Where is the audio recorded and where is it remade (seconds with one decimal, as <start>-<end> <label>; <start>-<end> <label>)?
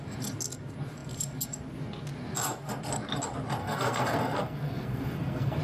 0.0-3.6 recorded; 3.6-5.6 remade